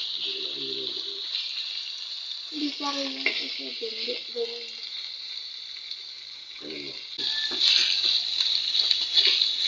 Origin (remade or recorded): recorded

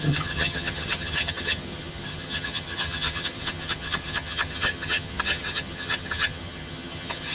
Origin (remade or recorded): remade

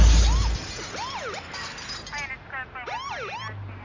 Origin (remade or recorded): recorded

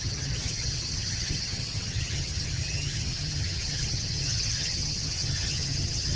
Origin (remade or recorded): remade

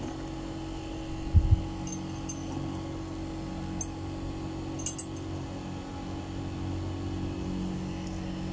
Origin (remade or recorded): recorded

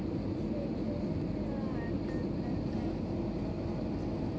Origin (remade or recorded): recorded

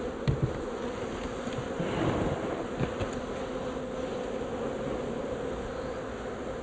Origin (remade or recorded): recorded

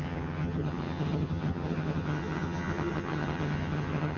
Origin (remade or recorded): remade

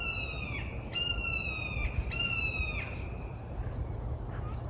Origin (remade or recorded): recorded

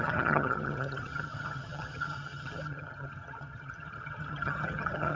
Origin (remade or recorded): remade